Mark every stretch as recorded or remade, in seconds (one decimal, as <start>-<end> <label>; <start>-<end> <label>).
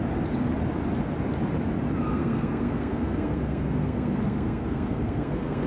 0.0-2.1 recorded; 2.1-5.7 remade